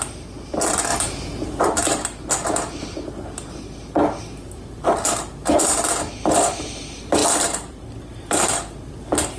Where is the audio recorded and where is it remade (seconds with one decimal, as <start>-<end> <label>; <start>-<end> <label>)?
0.0-9.4 recorded